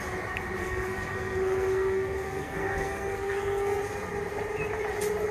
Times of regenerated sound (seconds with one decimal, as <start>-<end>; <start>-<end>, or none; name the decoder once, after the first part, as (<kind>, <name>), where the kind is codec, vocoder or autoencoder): 0.6-3.8 (codec, SNAC)